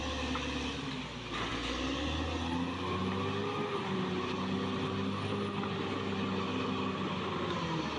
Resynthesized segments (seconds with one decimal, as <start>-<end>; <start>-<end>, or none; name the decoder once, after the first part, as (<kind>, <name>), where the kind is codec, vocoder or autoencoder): none

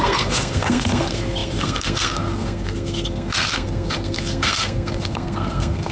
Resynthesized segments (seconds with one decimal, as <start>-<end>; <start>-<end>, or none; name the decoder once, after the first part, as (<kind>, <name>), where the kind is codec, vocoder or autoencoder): 0.0-5.9 (codec, SNAC)

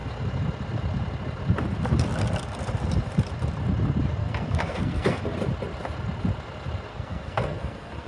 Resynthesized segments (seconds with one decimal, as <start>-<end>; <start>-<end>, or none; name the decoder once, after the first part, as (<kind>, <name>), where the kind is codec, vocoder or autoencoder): 4.2-5.2 (codec, SNAC); 6.9-8.1

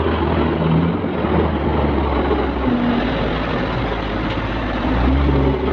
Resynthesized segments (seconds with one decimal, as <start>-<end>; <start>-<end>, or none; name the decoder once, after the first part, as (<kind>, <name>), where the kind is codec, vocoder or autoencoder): none

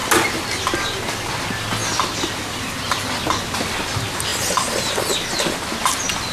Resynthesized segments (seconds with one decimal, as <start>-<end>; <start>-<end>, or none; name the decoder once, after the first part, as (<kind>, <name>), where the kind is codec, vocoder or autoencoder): none

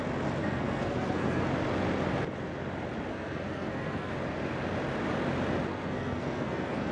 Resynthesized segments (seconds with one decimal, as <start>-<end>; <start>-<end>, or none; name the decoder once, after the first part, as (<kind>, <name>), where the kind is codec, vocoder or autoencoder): 0.4-1.4 (codec, SNAC); 3.1-4.1; 5.7-6.9

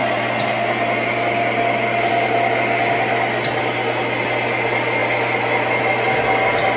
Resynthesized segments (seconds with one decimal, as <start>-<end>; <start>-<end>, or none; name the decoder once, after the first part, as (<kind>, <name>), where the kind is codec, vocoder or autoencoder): none